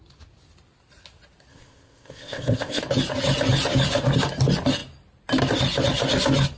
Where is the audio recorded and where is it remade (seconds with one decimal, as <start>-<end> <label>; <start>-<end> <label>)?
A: 0.0-1.5 recorded; 1.5-2.8 remade; 2.8-6.6 recorded